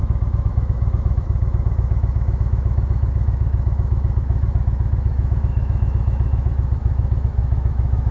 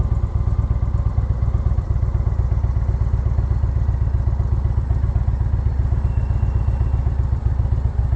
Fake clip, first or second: first